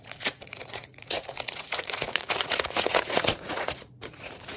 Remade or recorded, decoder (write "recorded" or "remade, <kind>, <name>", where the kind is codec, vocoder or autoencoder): remade, vocoder, Vocos